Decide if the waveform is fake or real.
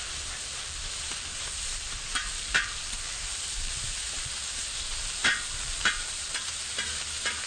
fake